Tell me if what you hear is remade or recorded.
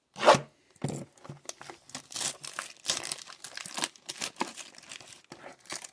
recorded